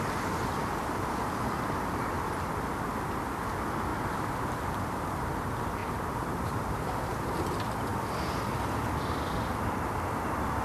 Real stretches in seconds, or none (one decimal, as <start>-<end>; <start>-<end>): 0.0-3.9; 5.2-5.8; 6.9-7.9; 8.6-10.6